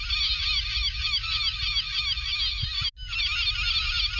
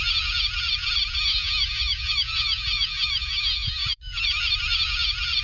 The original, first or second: first